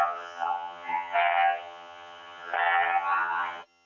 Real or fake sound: fake